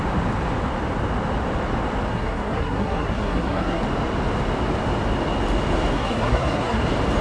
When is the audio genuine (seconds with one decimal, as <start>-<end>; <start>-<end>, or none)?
0.0-2.1; 3.8-5.9; 6.8-7.2